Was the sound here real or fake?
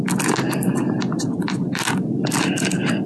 real